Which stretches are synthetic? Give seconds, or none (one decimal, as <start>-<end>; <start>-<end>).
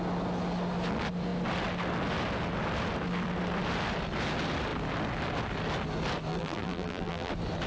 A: 6.3-7.3